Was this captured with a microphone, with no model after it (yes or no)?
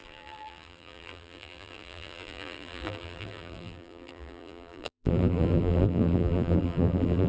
no